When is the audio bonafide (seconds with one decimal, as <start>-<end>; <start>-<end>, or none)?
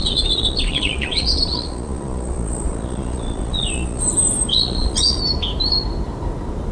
4.0-4.5; 5.2-6.7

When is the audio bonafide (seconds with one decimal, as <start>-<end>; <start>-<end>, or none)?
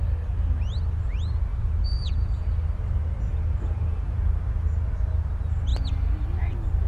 0.0-1.5; 2.4-6.9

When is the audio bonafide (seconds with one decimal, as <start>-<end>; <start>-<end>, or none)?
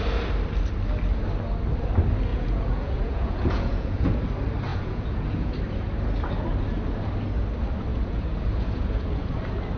0.0-2.3; 4.1-4.7; 5.5-7.9; 9.1-9.8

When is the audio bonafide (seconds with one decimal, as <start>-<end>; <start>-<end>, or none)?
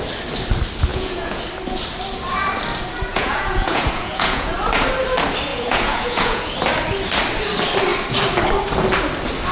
0.0-0.9; 1.4-3.1; 4.5-5.5; 6.5-9.5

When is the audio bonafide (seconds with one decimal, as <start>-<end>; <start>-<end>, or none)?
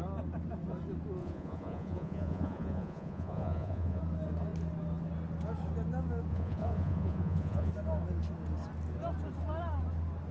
0.0-1.2; 4.0-6.3; 7.7-10.3